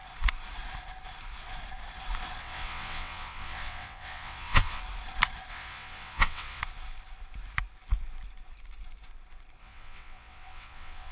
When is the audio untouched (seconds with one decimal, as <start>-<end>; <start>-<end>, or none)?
0.0-2.4; 4.8-5.5; 6.6-9.6